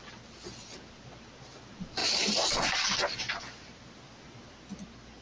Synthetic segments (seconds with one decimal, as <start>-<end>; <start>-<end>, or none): none

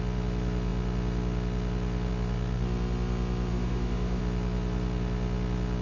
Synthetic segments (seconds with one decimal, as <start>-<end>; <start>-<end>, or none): 3.5-4.2

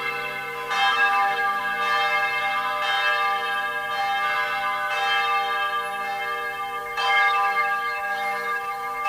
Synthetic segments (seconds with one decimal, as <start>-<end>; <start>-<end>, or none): 0.9-1.6; 6.8-9.1

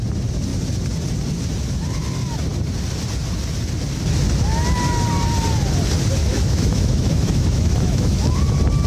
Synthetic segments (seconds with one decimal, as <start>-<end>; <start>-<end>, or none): 6.2-8.4

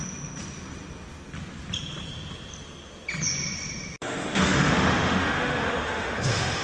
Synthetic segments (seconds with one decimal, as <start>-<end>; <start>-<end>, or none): 4.0-6.6

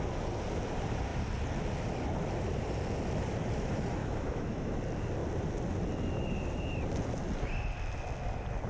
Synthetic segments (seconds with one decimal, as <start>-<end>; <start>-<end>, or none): 4.0-4.8

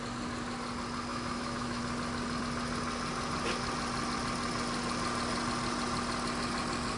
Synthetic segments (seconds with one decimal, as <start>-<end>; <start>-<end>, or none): 1.1-1.8

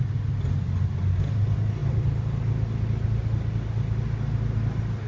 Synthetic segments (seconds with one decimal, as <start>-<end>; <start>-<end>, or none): none